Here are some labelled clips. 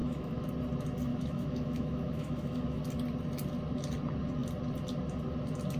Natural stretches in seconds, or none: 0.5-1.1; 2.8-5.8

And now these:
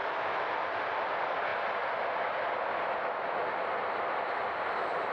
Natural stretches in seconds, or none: 0.5-5.1

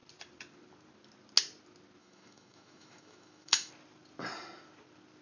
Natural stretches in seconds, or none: 0.0-2.0; 3.7-5.2

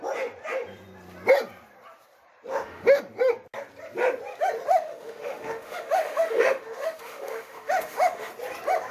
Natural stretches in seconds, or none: 0.0-2.5; 3.0-4.7; 8.3-8.9

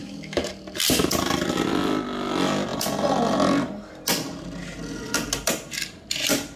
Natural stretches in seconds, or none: 0.5-6.6

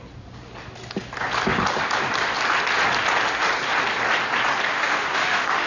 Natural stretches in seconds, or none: 0.0-4.7

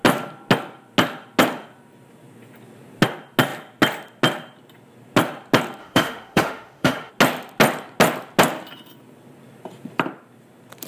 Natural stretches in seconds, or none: 0.0-5.8; 7.1-10.9